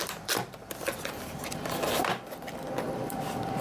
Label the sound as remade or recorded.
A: remade